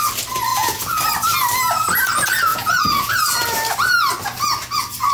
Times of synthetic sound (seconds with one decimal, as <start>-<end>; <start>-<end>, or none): 0.5-1.0; 2.5-3.1

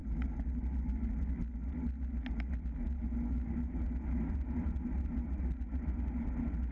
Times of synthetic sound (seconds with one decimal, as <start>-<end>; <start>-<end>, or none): none